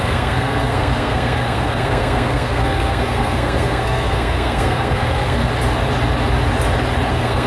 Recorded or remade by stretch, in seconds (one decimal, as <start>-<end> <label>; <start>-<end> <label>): 0.0-5.4 remade; 5.4-7.1 recorded; 7.1-7.5 remade